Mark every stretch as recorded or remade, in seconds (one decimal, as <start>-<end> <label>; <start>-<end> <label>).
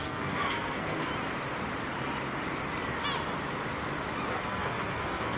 0.0-1.1 remade; 1.1-4.3 recorded; 4.3-5.4 remade